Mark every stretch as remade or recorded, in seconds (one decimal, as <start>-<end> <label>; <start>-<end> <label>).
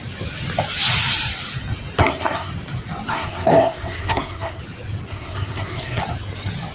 0.0-2.0 recorded; 2.0-2.5 remade; 2.5-3.1 recorded; 3.1-4.6 remade; 4.6-5.1 recorded; 5.1-6.0 remade; 6.0-6.7 recorded